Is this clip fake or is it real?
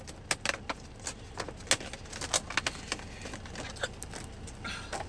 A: real